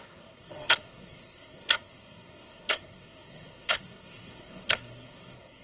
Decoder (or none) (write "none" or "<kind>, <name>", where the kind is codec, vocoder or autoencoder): codec, SNAC